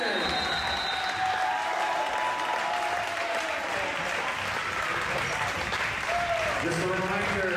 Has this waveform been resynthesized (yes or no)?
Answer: no